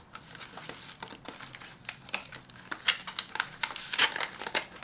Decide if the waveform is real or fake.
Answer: real